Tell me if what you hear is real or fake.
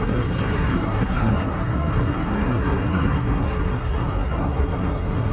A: fake